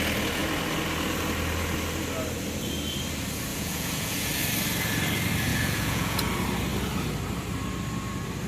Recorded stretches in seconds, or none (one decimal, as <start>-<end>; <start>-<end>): 0.0-3.5; 4.3-5.5; 6.2-8.5